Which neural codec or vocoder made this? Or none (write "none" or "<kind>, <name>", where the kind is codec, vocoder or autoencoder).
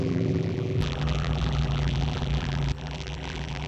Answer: vocoder, BigVGAN v2